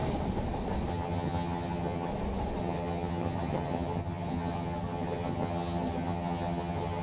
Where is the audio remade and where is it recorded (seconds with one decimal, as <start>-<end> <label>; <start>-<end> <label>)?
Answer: 0.0-0.9 recorded; 0.9-2.1 remade; 2.1-2.6 recorded; 2.6-7.0 remade